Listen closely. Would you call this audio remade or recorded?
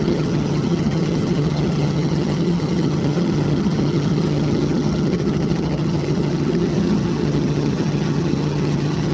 remade